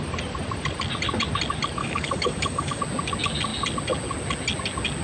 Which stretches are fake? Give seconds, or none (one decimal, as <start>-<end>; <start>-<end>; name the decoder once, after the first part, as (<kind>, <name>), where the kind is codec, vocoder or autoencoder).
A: 1.8-2.8 (codec, DAC)